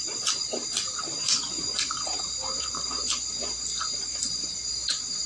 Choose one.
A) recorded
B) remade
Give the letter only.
A